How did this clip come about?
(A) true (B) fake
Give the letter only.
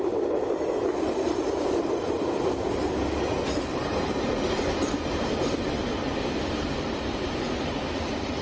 B